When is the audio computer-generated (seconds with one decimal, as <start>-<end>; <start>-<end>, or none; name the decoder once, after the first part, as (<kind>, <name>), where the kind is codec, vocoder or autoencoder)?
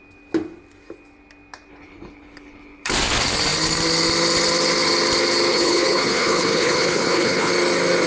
1.7-2.9 (codec, HILCodec); 5.5-7.5